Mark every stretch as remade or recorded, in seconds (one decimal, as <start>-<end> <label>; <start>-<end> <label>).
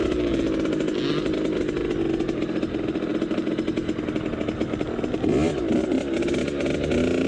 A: 0.0-7.3 recorded